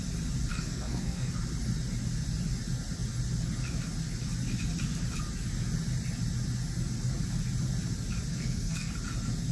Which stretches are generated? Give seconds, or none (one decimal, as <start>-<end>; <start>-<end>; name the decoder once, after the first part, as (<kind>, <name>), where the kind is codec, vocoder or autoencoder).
0.5-1.3 (codec, SNAC); 8.3-8.9